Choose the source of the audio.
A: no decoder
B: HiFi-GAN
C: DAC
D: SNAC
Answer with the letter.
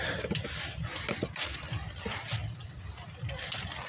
A